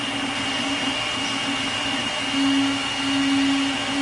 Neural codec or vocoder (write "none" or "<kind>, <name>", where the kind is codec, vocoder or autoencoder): none